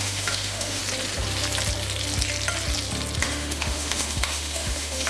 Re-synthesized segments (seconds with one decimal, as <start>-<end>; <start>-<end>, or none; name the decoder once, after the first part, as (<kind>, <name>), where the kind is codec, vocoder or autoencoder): 0.0-0.8 (autoencoder, DAC-VAE); 3.2-5.1

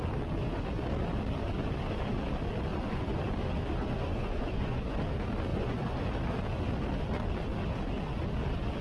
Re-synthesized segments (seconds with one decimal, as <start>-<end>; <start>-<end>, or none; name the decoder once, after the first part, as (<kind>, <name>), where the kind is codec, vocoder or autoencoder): 2.7-3.2 (vocoder, Vocos); 3.8-5.0; 5.5-6.0

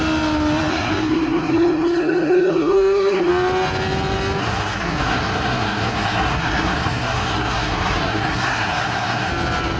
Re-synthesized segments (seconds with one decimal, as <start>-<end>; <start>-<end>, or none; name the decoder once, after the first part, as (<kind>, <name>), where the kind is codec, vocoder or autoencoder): 0.7-3.3 (codec, SNAC); 4.4-9.3